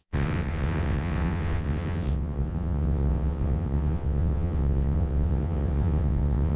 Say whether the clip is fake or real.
fake